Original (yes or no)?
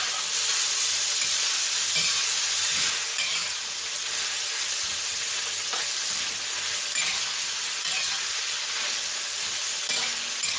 yes